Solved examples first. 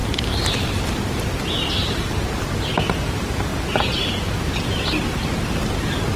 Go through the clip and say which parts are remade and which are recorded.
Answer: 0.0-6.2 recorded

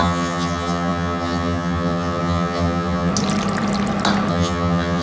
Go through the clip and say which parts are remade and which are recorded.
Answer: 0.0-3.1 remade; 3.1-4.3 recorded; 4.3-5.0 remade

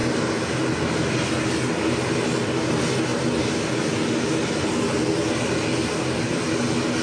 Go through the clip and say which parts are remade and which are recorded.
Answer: 0.0-7.0 recorded

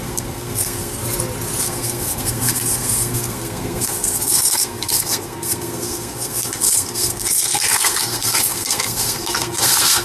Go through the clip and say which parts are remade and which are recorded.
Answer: 0.0-1.0 remade; 1.0-1.6 recorded; 1.6-10.0 remade

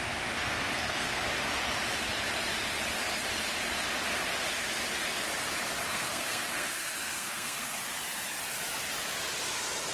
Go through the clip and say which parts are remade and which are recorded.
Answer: 0.0-0.5 recorded; 0.5-1.2 remade; 1.2-5.9 recorded; 5.9-7.8 remade; 7.8-9.9 recorded